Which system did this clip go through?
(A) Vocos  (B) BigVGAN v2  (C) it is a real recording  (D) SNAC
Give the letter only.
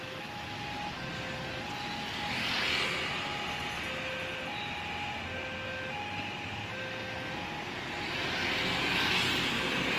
C